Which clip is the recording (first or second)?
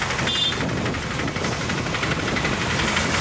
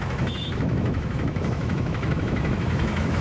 first